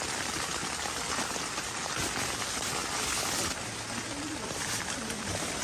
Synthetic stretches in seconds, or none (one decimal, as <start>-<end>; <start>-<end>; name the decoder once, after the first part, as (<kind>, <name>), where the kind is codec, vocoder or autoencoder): none